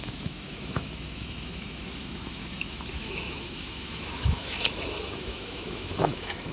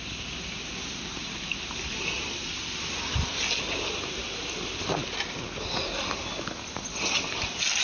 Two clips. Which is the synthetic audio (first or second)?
first